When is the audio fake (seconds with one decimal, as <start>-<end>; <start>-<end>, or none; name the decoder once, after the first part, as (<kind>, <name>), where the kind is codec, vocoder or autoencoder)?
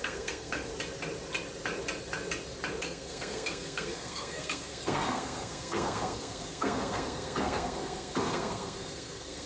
0.0-0.7 (codec, SNAC); 2.8-9.5